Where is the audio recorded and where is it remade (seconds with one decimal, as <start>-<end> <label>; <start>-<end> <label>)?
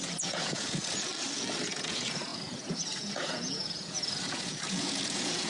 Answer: 0.0-1.1 remade; 1.1-1.6 recorded; 1.6-5.5 remade